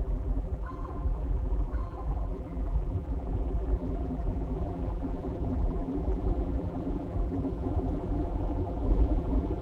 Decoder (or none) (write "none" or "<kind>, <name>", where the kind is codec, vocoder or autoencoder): vocoder, BigVGAN v2